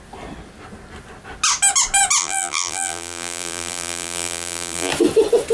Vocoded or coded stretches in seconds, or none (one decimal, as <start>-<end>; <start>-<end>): 2.2-4.9